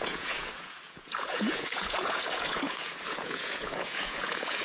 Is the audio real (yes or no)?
no